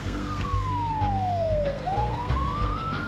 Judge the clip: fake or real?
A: fake